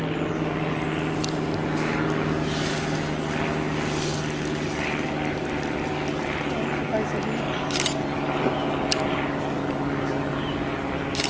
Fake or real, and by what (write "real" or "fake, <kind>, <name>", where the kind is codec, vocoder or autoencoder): real